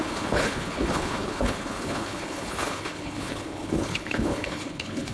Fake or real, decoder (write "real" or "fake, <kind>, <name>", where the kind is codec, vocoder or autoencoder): fake, codec, HILCodec